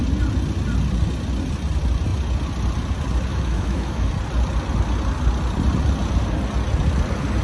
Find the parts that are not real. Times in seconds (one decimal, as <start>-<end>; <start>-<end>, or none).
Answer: 3.3-4.1